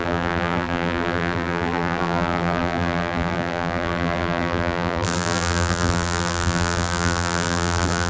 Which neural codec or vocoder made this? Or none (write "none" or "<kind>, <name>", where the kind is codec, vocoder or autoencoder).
vocoder, BigVGAN v2